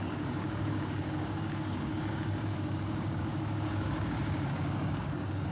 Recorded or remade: remade